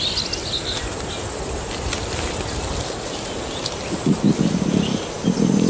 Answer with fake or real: real